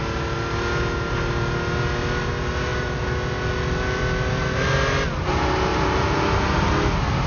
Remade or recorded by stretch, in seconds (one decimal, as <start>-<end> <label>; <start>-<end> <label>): 0.0-5.7 recorded; 5.7-6.7 remade; 6.7-7.3 recorded